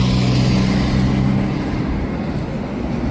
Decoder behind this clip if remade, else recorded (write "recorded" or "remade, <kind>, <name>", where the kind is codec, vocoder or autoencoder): recorded